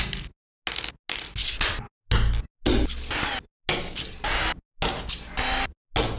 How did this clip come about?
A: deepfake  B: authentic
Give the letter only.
B